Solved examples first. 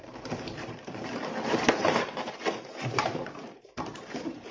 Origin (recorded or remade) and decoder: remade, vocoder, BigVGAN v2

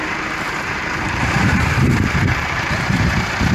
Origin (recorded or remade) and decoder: remade, vocoder, BigVGAN v2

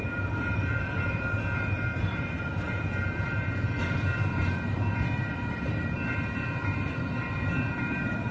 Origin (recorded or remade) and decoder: remade, vocoder, BigVGAN v2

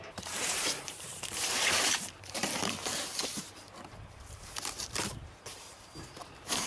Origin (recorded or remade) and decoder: remade, vocoder, BigVGAN v2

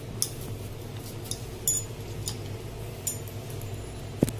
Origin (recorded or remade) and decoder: recorded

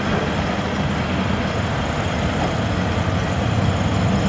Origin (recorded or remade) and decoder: recorded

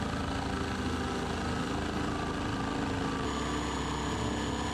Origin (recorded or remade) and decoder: recorded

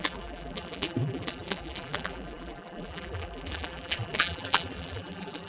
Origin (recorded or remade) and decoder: remade, vocoder, BigVGAN v2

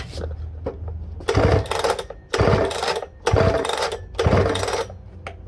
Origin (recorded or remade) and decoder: recorded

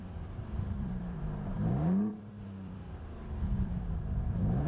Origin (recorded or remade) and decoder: remade, vocoder, BigVGAN v2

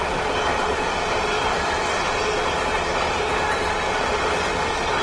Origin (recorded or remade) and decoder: recorded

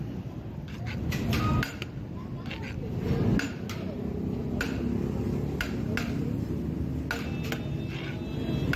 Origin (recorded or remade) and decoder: recorded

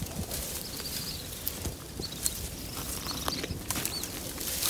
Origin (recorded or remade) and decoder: remade, vocoder, BigVGAN v2